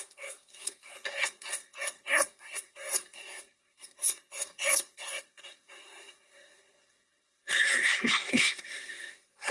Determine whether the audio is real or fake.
fake